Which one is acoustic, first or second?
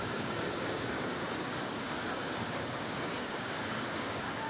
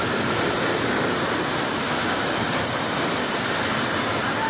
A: second